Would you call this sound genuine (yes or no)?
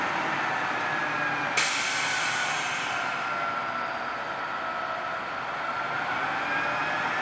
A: yes